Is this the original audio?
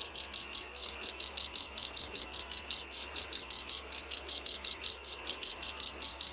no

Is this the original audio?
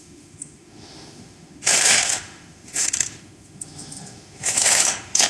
no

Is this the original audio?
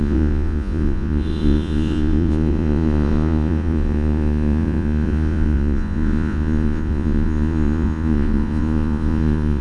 no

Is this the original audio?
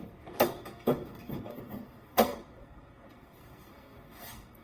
no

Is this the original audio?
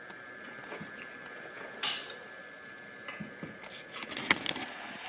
yes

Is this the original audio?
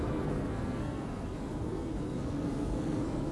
no